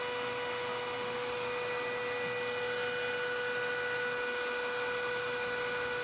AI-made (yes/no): no